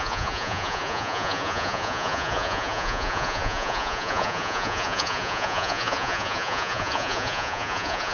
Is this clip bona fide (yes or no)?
no